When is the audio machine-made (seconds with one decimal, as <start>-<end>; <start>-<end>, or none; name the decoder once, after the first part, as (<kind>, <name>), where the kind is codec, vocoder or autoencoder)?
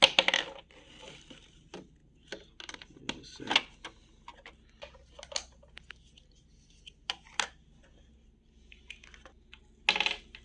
none